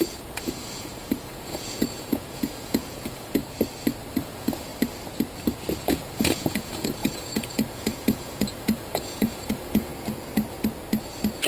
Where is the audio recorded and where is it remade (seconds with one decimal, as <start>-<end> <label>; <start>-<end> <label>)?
0.0-3.4 remade; 3.4-4.1 recorded; 4.1-4.7 remade; 4.7-5.8 recorded; 5.8-9.9 remade; 9.9-11.5 recorded